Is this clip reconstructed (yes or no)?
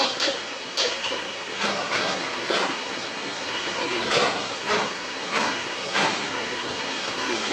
yes